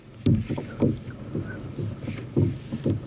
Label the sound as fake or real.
real